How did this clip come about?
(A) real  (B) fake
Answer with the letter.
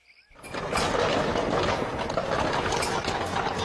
A